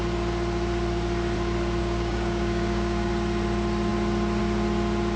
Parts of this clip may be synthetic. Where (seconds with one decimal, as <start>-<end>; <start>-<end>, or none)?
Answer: 1.8-3.1